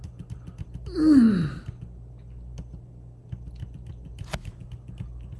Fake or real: real